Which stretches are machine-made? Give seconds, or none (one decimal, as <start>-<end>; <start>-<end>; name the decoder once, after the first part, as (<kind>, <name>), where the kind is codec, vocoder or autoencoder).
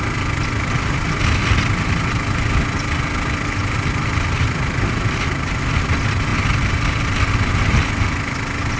none